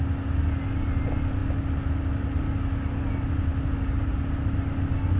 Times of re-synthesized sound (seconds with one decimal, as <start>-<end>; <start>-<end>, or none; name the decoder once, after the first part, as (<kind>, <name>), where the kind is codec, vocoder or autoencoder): none